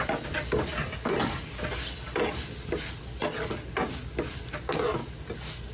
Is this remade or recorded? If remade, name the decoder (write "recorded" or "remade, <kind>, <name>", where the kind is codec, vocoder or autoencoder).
recorded